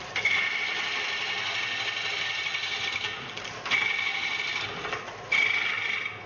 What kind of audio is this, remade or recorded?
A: recorded